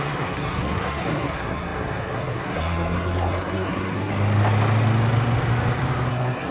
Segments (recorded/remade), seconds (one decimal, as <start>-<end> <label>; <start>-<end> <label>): 0.0-4.1 remade; 4.1-6.1 recorded; 6.1-6.5 remade

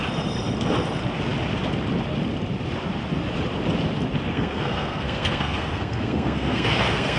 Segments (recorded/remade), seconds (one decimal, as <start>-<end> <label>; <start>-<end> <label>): 0.0-4.3 recorded; 4.3-7.2 remade

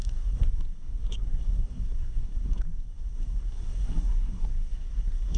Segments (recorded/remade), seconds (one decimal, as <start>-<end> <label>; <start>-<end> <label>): 0.0-5.4 remade

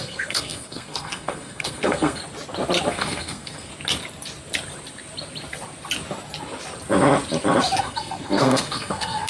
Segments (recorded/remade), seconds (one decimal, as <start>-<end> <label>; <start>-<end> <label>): 0.0-2.2 remade; 2.2-2.9 recorded; 2.9-3.7 remade; 3.7-7.8 recorded; 7.8-9.3 remade

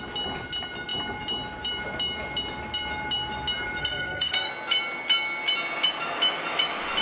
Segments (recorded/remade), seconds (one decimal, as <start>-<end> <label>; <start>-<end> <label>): 0.0-3.8 recorded; 3.8-4.5 remade; 4.5-7.0 recorded

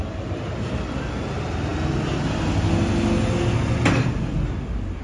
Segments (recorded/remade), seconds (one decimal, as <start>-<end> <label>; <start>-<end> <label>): 0.0-5.0 recorded

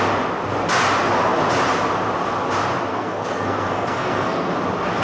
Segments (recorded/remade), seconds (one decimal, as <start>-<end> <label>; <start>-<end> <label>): 0.0-2.9 recorded; 2.9-4.5 remade; 4.5-5.0 recorded